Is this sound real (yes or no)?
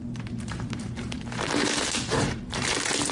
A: no